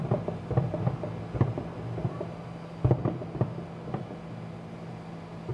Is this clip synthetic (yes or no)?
no